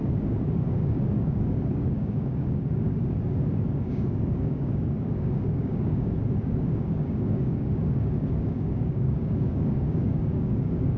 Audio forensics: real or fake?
fake